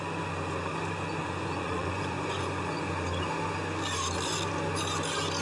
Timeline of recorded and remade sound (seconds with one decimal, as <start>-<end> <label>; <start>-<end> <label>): 0.0-1.2 recorded; 1.2-2.9 remade; 2.9-5.4 recorded